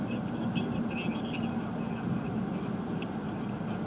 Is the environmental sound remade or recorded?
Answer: recorded